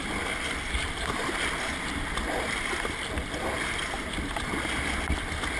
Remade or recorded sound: recorded